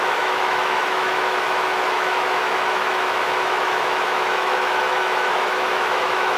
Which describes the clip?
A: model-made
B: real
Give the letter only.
A